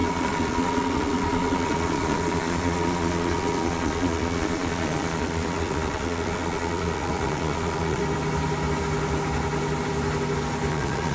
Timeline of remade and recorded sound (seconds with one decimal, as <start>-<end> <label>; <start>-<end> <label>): 0.0-8.0 remade; 8.0-10.7 recorded; 10.7-11.1 remade